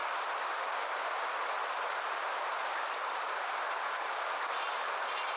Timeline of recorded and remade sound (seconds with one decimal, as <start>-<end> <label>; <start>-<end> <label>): 0.0-2.4 recorded; 2.4-5.4 remade